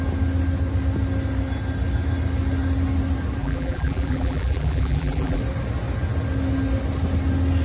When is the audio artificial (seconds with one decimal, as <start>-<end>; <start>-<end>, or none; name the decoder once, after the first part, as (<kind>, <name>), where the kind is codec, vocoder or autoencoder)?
3.4-5.4 (vocoder, BigVGAN v2)